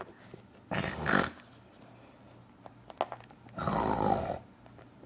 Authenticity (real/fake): real